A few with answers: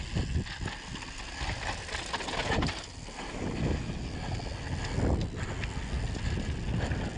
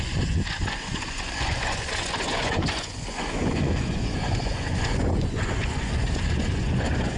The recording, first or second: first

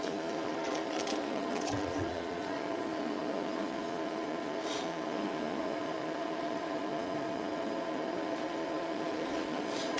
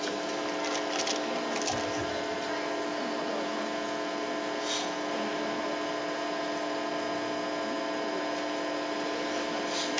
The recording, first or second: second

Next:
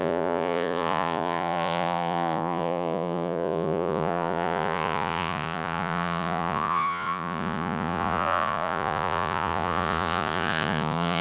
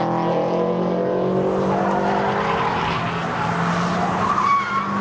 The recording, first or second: second